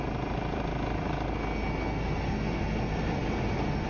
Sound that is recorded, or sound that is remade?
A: recorded